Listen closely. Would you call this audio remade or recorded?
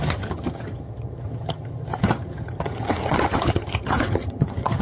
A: remade